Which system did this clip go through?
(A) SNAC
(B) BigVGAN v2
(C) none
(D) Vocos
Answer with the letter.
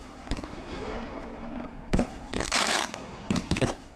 A